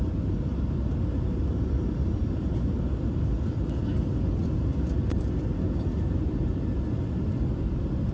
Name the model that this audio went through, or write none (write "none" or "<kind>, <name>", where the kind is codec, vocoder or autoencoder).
none